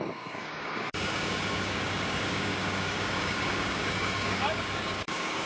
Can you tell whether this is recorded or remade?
remade